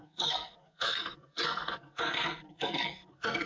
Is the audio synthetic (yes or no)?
yes